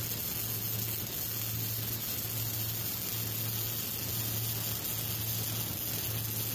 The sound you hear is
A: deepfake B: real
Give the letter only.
B